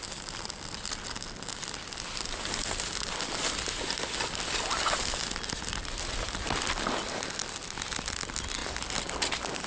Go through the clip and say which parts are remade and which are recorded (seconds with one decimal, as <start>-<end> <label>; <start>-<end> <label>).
0.0-9.7 recorded